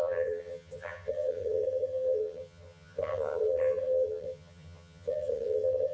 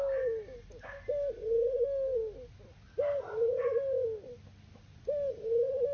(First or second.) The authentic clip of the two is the second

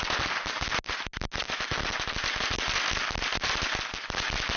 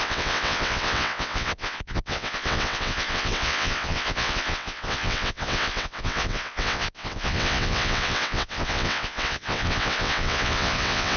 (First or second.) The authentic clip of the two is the first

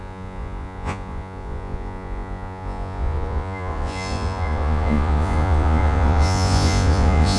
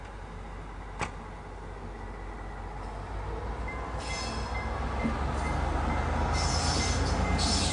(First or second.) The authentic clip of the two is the second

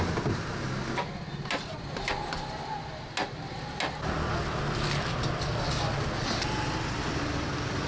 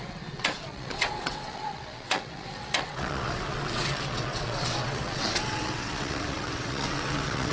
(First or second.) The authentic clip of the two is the first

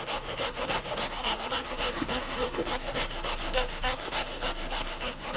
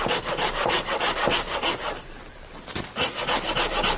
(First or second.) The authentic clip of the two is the second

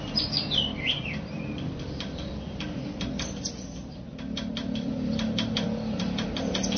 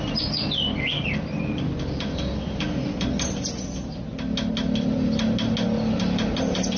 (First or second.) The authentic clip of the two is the second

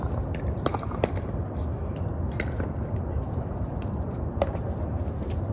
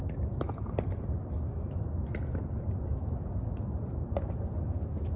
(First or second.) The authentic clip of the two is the second